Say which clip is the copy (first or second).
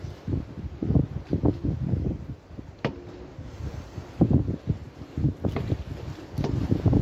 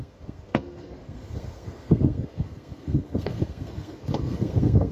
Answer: second